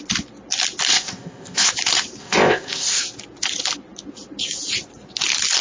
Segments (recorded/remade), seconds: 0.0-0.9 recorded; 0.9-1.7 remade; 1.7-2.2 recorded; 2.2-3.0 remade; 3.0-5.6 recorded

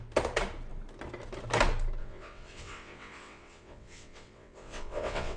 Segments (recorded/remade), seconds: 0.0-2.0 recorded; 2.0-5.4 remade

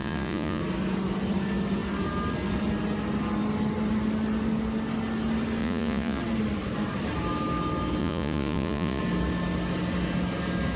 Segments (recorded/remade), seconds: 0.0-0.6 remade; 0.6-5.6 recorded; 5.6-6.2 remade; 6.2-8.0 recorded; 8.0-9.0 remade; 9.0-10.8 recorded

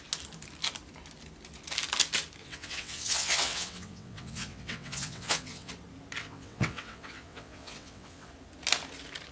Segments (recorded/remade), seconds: 0.0-2.4 recorded; 2.4-5.7 remade; 5.7-6.2 recorded; 6.2-8.3 remade; 8.3-9.3 recorded

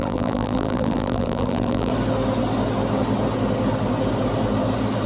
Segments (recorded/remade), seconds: 0.0-1.9 remade; 1.9-5.1 recorded

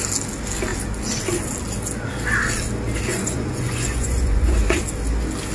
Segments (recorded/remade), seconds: 0.0-3.1 recorded; 3.1-4.8 remade; 4.8-5.5 recorded

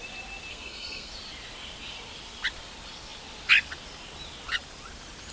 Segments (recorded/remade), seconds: 0.0-0.5 recorded; 0.5-1.1 remade; 1.1-5.3 recorded